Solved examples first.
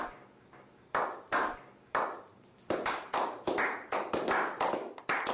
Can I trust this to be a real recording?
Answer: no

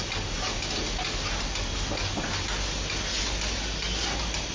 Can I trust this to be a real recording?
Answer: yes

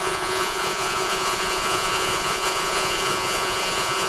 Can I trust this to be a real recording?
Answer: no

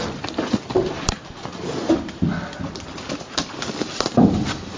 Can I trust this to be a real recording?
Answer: yes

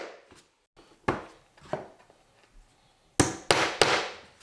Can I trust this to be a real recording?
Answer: yes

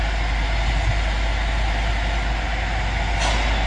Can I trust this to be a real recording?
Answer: yes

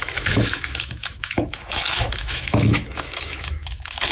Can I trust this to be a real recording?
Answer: no